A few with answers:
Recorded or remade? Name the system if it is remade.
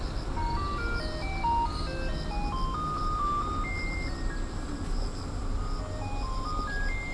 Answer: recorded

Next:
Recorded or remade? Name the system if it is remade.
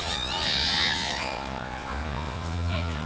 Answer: remade, vocoder, Vocos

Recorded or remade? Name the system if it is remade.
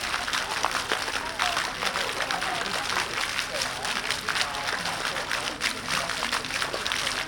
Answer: recorded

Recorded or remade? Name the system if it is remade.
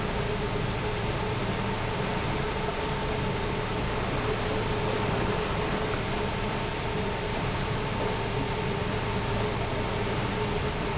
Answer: recorded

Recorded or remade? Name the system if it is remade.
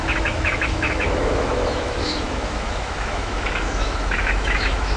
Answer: remade, autoencoder, DAC-VAE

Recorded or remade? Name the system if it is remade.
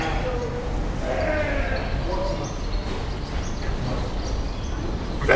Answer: recorded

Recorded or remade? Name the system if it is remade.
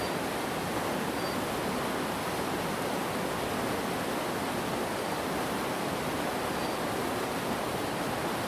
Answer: recorded